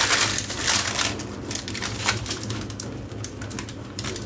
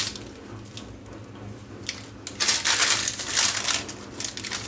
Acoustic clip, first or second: second